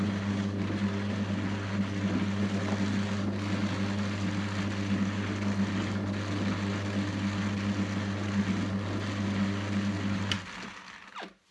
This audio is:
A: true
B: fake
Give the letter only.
A